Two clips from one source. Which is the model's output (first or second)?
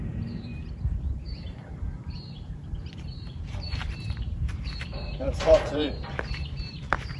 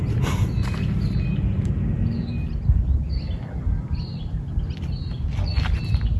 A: first